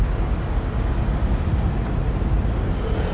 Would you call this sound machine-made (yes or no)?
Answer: no